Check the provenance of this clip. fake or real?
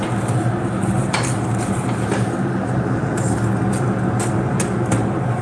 real